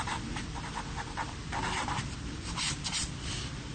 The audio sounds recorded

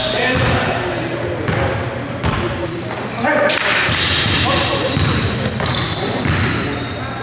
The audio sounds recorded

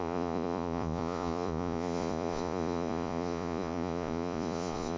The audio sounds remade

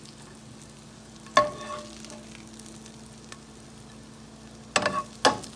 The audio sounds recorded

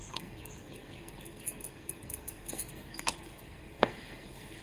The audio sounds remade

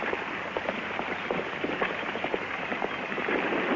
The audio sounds recorded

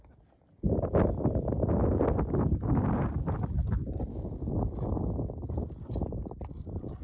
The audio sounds recorded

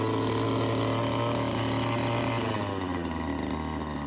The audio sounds recorded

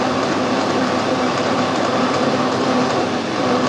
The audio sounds remade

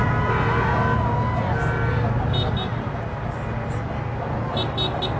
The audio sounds recorded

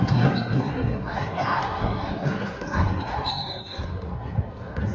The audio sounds remade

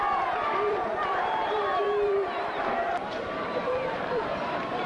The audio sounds remade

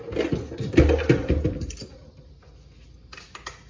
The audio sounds recorded